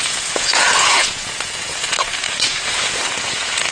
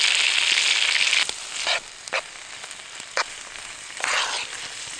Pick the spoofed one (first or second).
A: first